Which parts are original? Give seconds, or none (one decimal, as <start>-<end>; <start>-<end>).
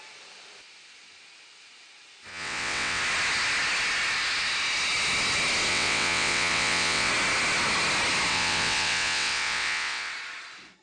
0.0-2.3; 3.0-5.7; 7.1-8.3; 10.1-10.8